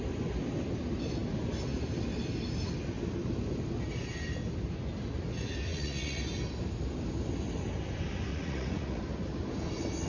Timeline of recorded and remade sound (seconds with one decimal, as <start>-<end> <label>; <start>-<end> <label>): 0.0-5.7 recorded; 5.7-6.2 remade; 6.2-8.3 recorded; 8.3-9.0 remade; 9.0-10.1 recorded